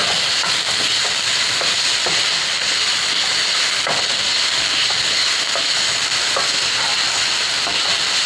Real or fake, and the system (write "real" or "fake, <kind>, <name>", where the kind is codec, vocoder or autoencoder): real